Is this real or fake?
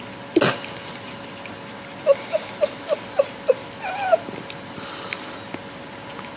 real